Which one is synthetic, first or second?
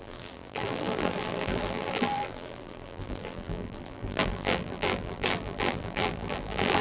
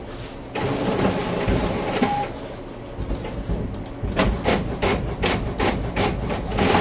first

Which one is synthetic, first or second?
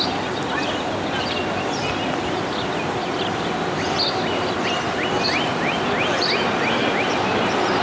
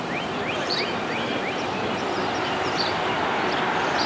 second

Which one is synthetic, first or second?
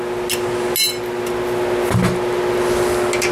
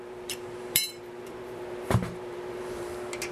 second